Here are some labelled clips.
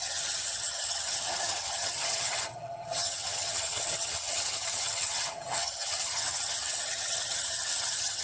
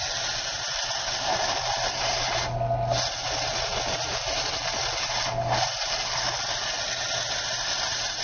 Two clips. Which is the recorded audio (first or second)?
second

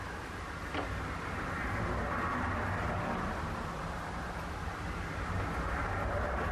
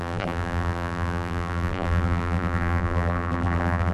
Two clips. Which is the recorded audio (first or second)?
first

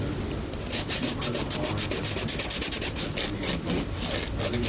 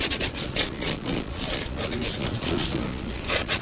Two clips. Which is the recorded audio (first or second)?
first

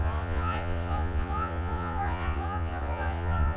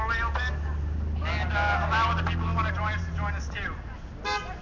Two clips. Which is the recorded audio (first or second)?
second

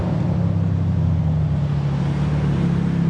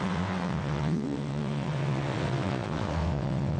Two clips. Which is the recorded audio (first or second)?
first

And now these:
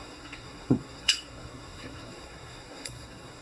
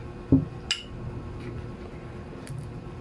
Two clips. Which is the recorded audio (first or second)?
second